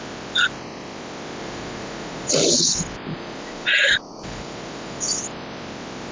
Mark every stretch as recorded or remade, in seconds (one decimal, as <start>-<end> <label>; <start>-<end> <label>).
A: 0.0-1.4 recorded; 1.4-2.4 remade; 2.4-3.1 recorded; 3.1-5.2 remade; 5.2-6.1 recorded